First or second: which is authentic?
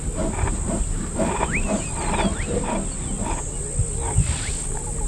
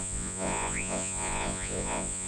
first